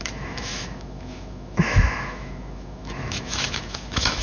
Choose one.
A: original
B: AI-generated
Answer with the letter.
B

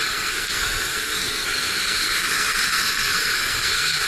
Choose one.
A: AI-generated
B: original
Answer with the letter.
A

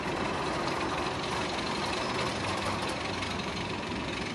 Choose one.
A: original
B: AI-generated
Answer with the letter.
B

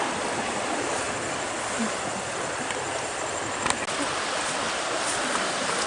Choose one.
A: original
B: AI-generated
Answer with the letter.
A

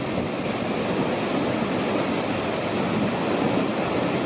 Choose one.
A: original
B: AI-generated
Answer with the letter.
A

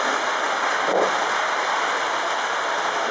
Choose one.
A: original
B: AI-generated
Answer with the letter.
A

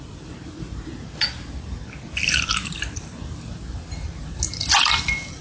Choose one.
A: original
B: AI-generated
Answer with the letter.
A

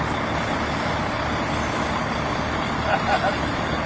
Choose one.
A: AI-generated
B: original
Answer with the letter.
B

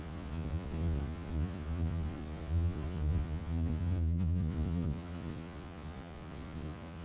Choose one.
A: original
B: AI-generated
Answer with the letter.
B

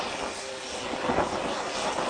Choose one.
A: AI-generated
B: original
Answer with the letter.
B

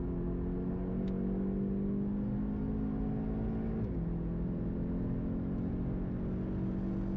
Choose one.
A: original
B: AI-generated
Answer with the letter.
A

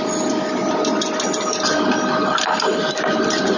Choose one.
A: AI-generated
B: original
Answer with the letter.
B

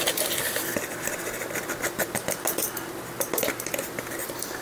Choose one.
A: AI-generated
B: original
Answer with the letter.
B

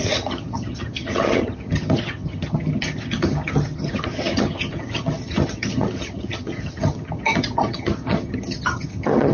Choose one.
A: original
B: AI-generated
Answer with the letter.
B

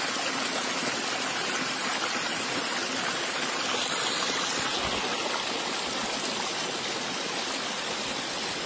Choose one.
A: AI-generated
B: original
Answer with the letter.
B